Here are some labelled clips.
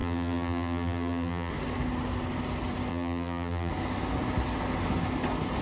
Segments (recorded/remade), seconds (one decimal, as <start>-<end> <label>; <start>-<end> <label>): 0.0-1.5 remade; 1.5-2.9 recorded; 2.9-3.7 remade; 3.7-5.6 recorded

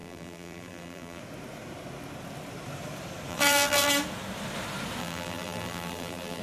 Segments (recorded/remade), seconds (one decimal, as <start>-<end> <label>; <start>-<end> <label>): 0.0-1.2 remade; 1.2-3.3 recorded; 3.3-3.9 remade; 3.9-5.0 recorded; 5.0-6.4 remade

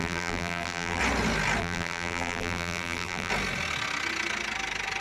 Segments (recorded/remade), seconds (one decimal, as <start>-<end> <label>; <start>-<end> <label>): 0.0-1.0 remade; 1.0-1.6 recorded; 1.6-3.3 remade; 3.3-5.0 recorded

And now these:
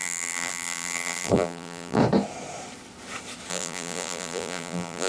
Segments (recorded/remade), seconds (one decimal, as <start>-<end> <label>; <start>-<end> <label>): 0.0-2.0 remade; 2.0-3.5 recorded; 3.5-5.1 remade

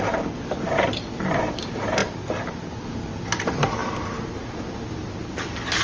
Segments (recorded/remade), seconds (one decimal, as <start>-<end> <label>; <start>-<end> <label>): 0.0-2.0 recorded; 2.0-2.8 remade; 2.8-3.8 recorded; 3.8-4.5 remade; 4.5-5.8 recorded

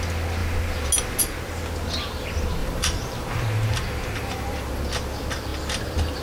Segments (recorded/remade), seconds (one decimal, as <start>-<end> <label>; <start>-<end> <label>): 0.0-2.6 recorded; 2.6-4.8 remade; 4.8-6.2 recorded

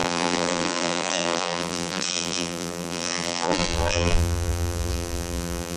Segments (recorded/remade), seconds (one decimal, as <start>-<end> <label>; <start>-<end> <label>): 0.0-5.8 remade